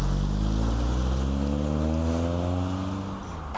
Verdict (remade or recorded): recorded